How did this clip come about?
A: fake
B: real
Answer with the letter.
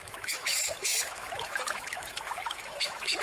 A